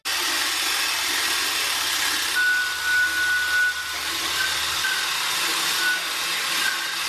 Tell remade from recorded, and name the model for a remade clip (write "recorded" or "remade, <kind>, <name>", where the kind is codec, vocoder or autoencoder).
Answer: recorded